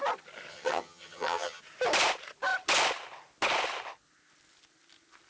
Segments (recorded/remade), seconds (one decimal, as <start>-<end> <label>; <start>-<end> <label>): 0.0-0.5 recorded; 0.5-1.6 remade; 1.6-5.3 recorded